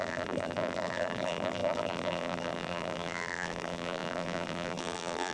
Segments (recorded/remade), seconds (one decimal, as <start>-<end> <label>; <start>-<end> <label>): 0.0-5.3 remade